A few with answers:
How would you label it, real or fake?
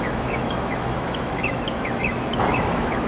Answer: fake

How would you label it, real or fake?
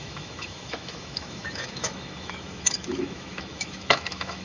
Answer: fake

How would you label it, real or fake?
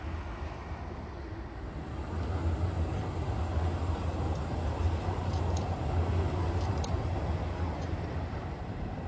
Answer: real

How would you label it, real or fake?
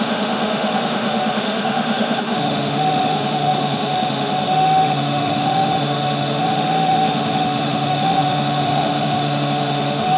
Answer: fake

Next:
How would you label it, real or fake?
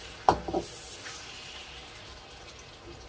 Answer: real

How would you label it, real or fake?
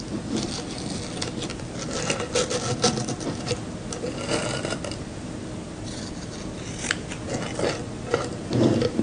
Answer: real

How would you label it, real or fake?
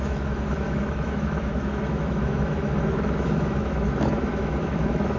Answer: fake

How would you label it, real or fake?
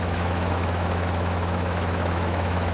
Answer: fake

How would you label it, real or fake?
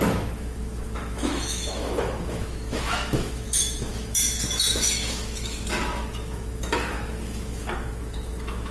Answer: fake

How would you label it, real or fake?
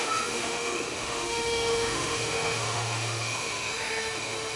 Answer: fake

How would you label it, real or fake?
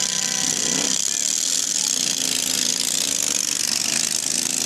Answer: real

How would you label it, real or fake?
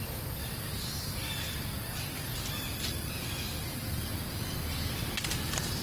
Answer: real